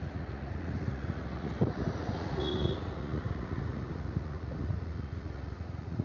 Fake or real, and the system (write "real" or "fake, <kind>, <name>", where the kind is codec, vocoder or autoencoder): fake, vocoder, Vocos